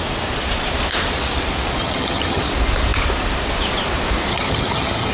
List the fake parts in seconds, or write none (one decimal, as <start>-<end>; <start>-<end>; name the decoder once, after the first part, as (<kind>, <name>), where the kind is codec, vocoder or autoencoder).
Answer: 1.8-2.4 (vocoder, HiFi-GAN); 4.3-5.1